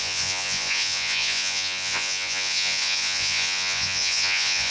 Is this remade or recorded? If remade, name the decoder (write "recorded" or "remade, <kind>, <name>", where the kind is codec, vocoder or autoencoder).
remade, vocoder, Vocos